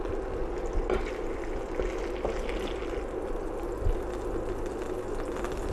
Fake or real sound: real